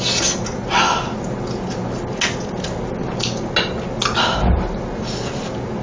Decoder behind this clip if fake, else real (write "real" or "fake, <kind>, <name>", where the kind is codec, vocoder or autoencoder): real